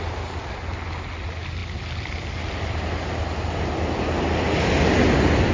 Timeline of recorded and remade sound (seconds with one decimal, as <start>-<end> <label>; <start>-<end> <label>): 0.0-5.5 recorded